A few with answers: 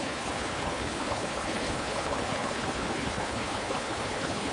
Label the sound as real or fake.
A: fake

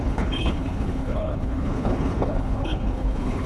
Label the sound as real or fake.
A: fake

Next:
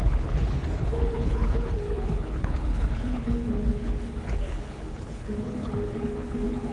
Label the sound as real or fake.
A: fake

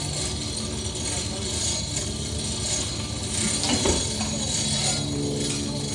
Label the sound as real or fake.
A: real